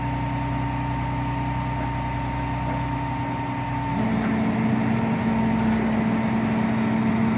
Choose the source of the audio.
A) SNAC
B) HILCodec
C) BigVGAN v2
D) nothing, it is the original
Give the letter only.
D